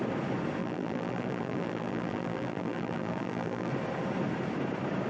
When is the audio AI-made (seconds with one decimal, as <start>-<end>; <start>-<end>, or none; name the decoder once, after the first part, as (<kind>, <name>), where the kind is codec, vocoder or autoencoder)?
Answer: 0.6-3.7 (vocoder, BigVGAN v2)